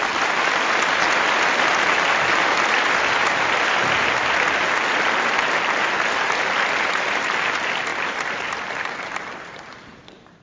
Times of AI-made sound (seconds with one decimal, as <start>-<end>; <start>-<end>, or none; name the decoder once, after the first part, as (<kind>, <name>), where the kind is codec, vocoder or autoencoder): 7.9-10.4 (vocoder, BigVGAN v2)